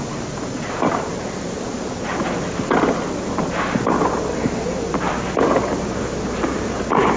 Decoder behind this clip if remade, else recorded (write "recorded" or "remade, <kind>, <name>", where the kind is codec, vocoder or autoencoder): recorded